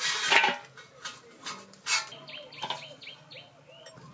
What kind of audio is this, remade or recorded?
recorded